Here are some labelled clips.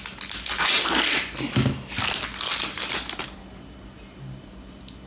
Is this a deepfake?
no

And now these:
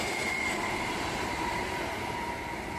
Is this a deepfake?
yes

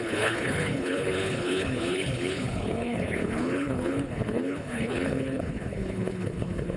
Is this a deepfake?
yes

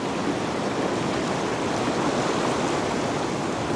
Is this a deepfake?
no